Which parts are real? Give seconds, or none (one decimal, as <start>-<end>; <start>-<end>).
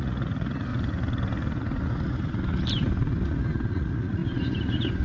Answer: 0.7-3.7; 4.2-5.0